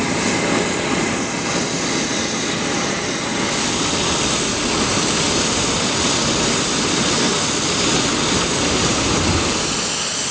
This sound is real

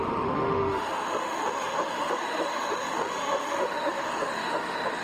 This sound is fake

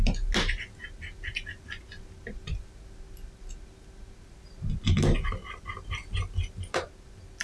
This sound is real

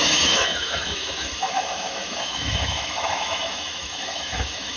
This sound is fake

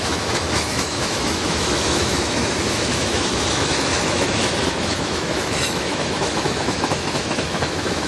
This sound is fake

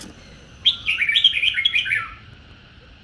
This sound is real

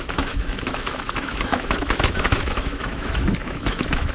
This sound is fake